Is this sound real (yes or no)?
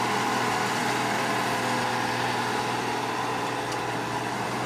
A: yes